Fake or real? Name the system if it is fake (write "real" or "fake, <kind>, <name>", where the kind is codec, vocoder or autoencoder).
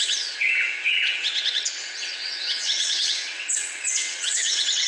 fake, vocoder, WaveNeXt